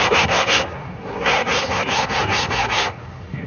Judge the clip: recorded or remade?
remade